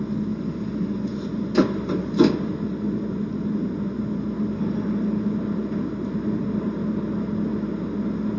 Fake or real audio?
real